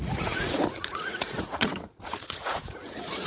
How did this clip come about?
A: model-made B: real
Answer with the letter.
A